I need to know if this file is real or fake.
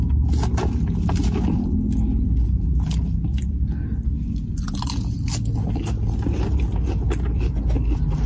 real